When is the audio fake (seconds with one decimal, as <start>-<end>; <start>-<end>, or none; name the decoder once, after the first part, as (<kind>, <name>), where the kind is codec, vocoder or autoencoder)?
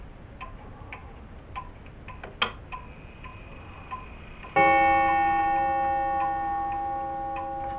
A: none